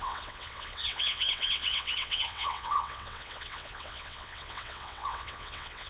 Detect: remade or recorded remade